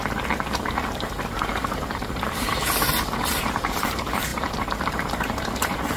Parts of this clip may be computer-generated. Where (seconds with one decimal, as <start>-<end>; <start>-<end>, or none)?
0.0-6.0